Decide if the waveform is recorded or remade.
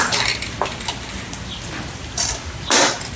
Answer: recorded